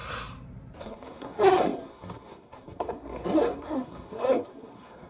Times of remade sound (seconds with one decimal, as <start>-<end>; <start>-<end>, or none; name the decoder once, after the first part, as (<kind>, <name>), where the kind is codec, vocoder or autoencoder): 0.8-5.1 (codec, SNAC)